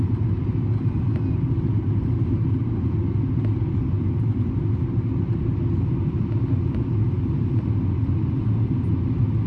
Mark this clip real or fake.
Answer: real